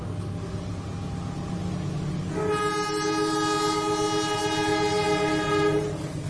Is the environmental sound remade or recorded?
recorded